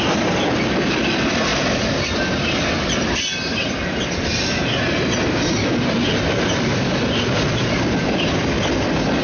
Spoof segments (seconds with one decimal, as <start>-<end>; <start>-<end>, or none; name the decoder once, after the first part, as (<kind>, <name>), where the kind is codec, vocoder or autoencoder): 1.5-2.2 (vocoder, BigVGAN v2)